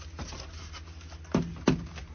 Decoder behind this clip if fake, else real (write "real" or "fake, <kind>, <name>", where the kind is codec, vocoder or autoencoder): real